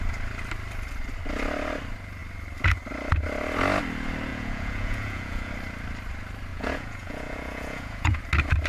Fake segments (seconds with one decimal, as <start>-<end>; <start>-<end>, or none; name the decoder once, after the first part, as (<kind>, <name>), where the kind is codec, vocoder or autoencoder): 4.3-5.5 (vocoder, Vocos); 6.5-8.2